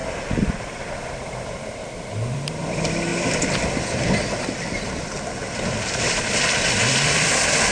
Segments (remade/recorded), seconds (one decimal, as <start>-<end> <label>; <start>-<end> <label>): 0.0-0.6 recorded; 0.6-3.1 remade; 3.1-5.7 recorded; 5.7-7.7 remade